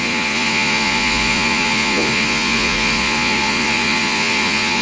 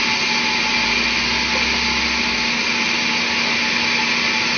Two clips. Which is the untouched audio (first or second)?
second